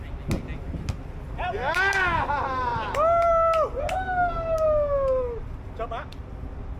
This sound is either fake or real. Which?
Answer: real